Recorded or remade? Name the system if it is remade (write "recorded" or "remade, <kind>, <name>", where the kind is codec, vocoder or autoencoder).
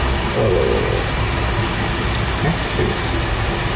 recorded